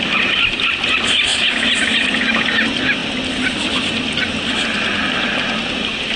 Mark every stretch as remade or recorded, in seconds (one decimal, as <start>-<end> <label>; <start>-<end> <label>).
0.0-6.2 recorded